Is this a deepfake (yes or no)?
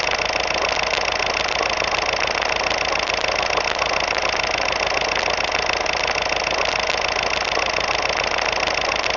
no